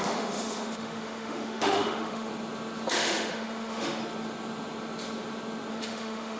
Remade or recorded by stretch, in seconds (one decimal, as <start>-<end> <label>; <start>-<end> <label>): 0.0-2.3 remade; 2.3-2.9 recorded; 2.9-4.0 remade; 4.0-5.7 recorded; 5.7-6.4 remade